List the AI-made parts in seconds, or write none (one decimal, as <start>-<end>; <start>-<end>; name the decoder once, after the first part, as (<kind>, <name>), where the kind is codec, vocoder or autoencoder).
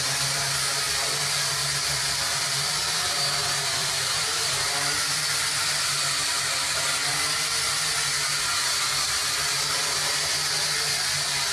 1.6-5.5 (vocoder, BigVGAN v2)